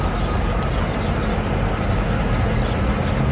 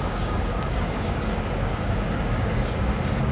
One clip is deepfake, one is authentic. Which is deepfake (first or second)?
second